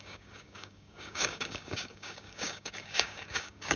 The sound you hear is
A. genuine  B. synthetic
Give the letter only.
B